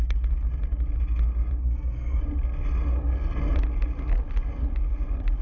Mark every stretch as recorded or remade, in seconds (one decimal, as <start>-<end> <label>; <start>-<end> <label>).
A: 0.0-1.6 recorded; 1.6-2.2 remade; 2.2-5.4 recorded